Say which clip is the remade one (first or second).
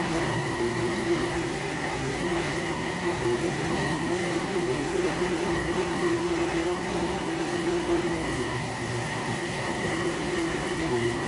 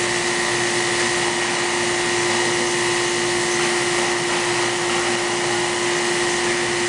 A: first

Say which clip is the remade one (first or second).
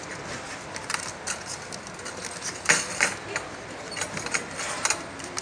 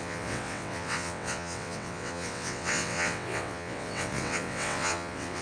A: second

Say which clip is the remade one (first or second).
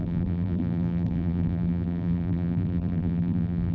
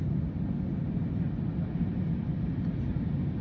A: first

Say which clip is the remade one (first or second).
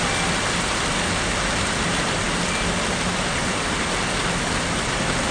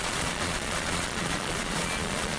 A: second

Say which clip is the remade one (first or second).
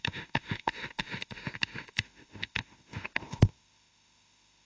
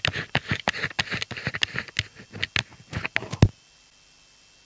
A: first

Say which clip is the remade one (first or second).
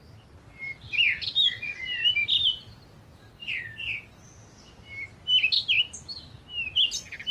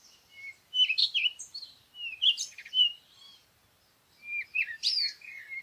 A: second